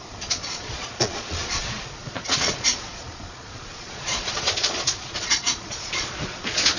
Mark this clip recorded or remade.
remade